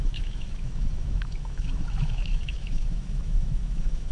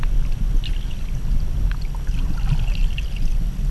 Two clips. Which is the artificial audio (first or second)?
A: first